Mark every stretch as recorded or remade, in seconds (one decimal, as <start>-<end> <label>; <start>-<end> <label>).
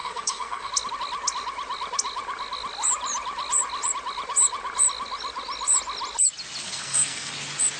0.0-0.7 remade; 0.7-6.6 recorded; 6.6-7.3 remade; 7.3-7.8 recorded